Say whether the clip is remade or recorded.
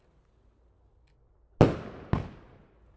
recorded